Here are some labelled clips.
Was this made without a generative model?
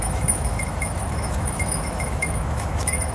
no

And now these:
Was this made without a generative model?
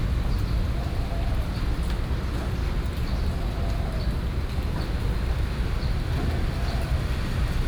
yes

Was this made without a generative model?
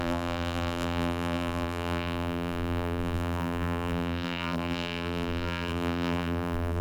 no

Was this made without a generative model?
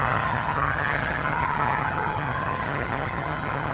no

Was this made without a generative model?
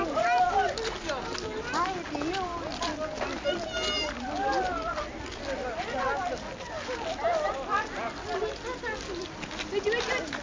yes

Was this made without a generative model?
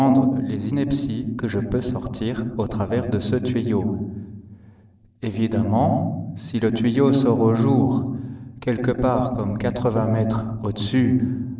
yes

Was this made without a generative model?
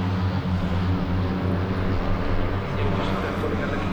yes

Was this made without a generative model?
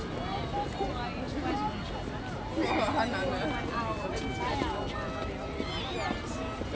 yes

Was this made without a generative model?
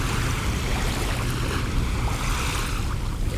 yes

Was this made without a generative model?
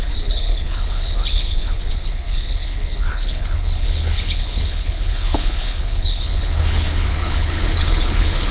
no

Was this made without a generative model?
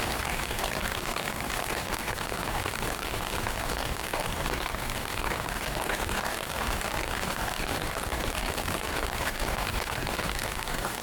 no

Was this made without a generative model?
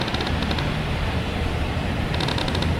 yes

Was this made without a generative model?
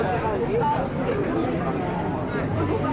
no